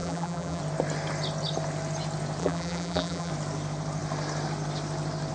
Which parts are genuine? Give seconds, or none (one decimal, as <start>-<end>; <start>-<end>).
0.6-2.4; 3.3-5.3